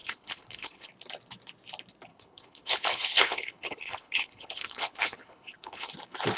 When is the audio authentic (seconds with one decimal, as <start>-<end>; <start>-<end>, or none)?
0.9-2.1; 5.9-6.4